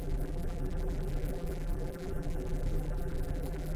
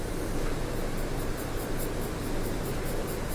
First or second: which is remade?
first